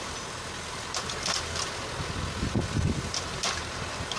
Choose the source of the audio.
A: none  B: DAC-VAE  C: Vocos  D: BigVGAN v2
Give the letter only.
A